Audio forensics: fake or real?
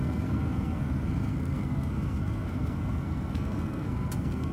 fake